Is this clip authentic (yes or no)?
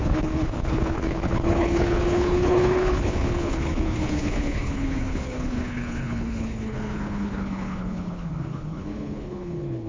no